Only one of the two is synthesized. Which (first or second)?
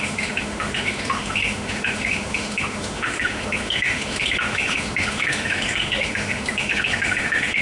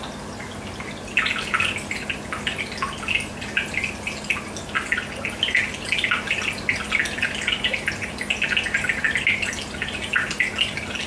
first